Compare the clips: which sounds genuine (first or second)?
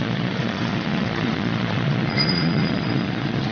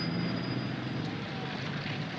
second